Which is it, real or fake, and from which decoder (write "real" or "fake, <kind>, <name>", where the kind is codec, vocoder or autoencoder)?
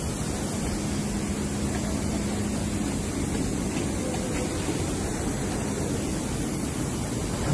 real